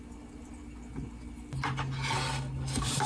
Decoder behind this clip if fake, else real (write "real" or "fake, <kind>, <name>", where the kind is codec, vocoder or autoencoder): real